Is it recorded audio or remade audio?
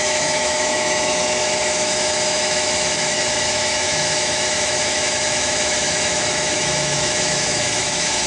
remade